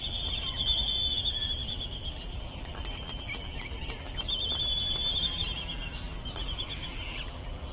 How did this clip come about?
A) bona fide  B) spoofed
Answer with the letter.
B